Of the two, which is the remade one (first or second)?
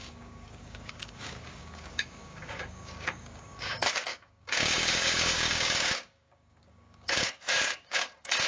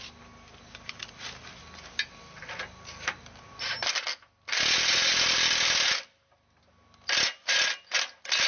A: first